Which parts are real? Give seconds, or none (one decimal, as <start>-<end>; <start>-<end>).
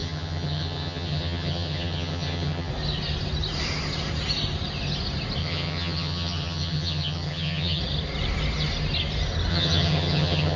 2.7-5.4; 7.8-9.5